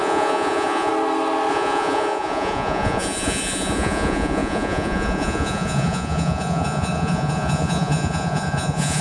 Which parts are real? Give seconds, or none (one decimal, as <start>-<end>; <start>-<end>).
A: 0.9-1.5